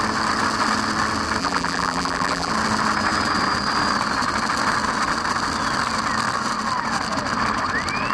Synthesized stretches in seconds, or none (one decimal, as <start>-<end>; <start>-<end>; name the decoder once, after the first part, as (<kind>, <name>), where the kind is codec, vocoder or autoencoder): 1.4-2.5 (vocoder, BigVGAN v2)